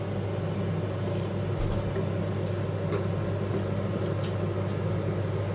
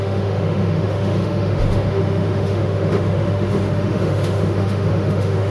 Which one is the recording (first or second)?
first